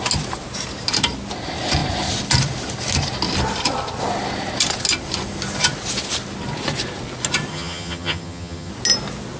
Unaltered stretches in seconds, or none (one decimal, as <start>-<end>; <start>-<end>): 0.0-7.5; 8.7-9.4